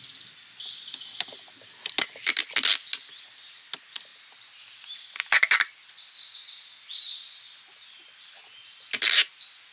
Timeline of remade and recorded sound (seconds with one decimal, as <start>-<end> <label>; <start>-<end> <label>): 0.0-9.7 recorded

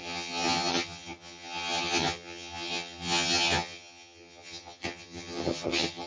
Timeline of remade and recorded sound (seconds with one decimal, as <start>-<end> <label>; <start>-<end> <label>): 0.0-6.1 remade

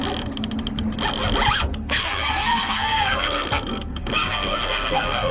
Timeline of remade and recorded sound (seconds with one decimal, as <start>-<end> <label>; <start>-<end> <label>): 0.0-1.7 recorded; 1.7-5.3 remade

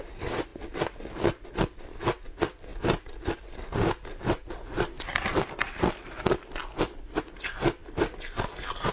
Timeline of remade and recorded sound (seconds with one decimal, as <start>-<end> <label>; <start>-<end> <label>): 0.0-8.9 recorded